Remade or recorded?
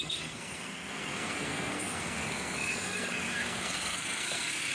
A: remade